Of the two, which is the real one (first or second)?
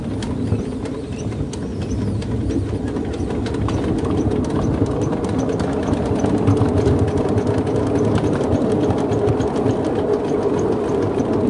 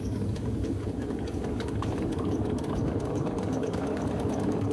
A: first